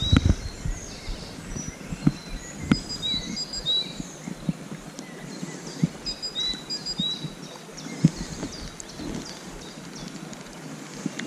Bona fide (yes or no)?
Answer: yes